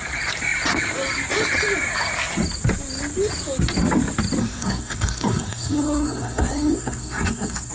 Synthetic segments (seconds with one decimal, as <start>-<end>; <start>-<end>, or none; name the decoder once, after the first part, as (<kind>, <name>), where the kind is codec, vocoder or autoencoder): 4.4-7.7 (codec, SNAC)